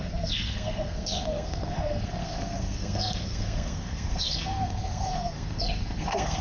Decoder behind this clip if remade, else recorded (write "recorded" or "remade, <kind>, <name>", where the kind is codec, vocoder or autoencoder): remade, codec, SNAC